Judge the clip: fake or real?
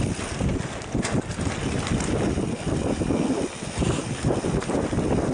real